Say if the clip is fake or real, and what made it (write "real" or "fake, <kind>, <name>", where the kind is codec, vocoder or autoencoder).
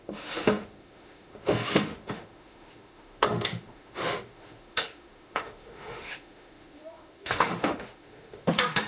fake, autoencoder, DAC-VAE